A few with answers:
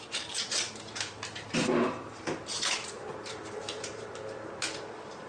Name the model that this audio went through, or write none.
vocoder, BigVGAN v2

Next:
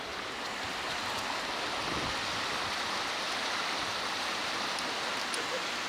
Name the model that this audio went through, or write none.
none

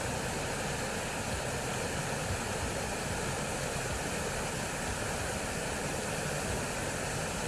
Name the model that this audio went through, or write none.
none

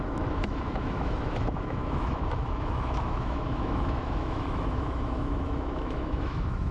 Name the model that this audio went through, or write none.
autoencoder, DAC-VAE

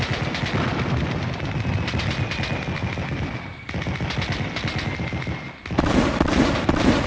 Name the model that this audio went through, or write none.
none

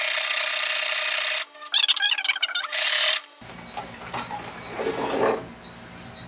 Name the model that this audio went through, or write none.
none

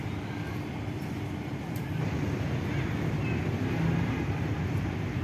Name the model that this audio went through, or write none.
vocoder, BigVGAN v2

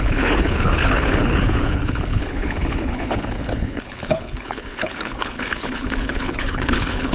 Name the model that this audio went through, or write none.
codec, HILCodec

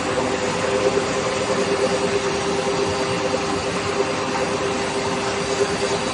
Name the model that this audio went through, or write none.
none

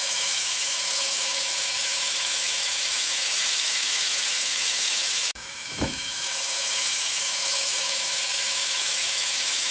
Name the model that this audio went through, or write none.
autoencoder, DAC-VAE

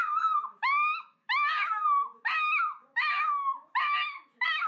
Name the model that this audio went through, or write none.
autoencoder, DAC-VAE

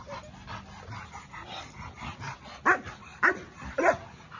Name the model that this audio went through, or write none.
none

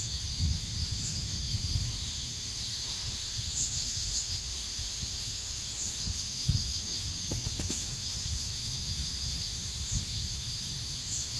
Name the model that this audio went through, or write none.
autoencoder, DAC-VAE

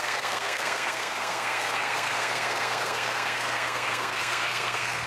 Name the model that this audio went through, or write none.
codec, SNAC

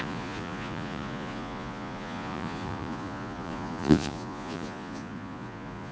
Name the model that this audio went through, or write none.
vocoder, Vocos